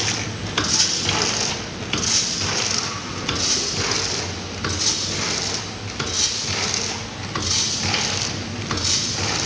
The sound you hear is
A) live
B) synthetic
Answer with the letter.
A